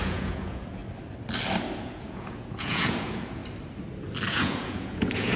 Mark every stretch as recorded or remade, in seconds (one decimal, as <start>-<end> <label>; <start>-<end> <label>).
0.0-0.8 remade; 0.8-1.8 recorded; 1.8-3.4 remade; 3.4-4.3 recorded; 4.3-5.4 remade